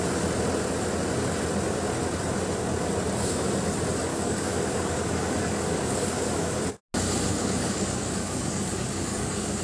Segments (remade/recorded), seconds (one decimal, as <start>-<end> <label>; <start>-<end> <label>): 0.0-4.1 recorded; 4.1-6.6 remade; 6.6-7.3 recorded; 7.3-9.6 remade